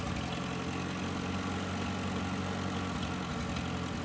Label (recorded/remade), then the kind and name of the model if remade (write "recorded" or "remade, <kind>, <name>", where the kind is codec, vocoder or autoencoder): recorded